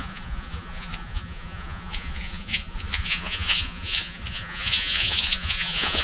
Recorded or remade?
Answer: remade